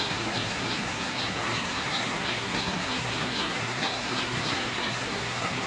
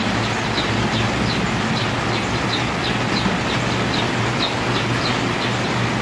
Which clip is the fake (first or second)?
first